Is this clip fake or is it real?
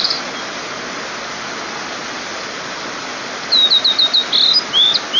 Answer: real